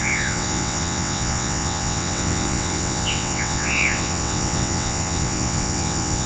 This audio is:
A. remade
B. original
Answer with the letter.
A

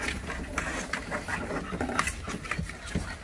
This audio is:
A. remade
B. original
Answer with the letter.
B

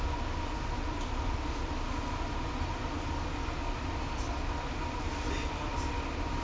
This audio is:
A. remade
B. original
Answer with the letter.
B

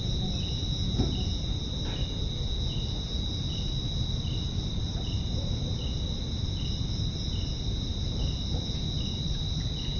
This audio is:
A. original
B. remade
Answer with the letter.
A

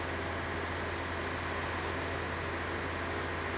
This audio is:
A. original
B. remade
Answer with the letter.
A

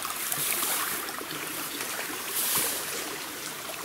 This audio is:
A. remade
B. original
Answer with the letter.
A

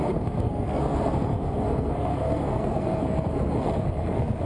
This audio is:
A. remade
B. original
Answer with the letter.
A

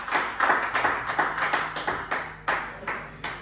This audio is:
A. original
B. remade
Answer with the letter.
A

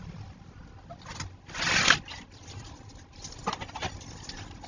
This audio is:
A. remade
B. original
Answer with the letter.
B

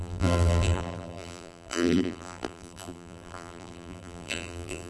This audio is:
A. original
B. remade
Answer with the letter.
B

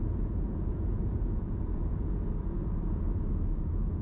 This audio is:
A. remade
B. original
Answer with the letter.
A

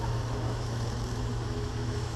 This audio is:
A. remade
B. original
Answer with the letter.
A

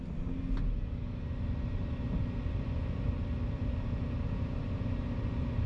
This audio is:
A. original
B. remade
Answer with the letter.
A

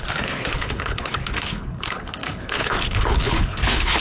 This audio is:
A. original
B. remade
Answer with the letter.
B